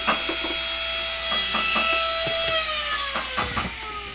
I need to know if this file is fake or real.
real